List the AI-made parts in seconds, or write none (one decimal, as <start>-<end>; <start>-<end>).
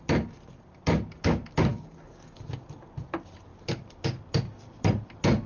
1.7-2.5